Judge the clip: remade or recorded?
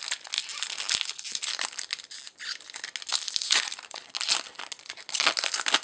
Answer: recorded